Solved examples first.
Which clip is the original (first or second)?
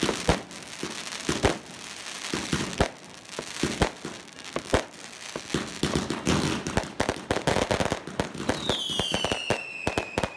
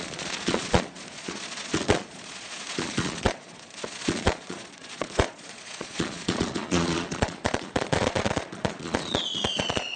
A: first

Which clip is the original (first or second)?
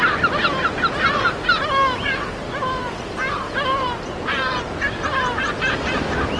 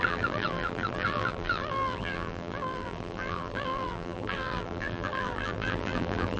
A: first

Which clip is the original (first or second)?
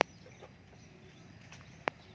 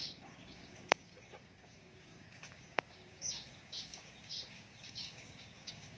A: first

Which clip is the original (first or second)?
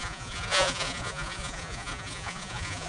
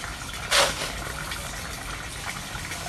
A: second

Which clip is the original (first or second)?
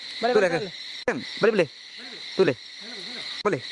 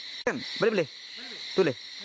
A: second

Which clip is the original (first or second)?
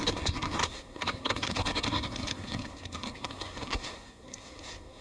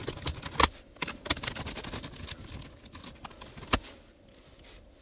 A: second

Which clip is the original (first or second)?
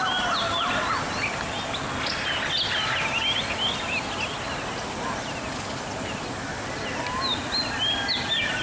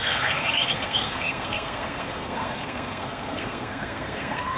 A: first